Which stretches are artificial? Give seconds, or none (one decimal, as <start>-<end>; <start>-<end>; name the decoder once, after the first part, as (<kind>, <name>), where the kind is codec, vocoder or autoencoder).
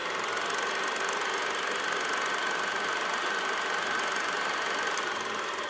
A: none